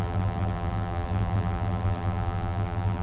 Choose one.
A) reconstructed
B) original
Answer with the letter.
A